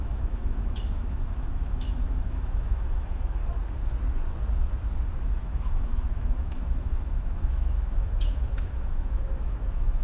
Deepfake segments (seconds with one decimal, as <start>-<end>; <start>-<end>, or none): 0.0-3.4; 5.3-10.0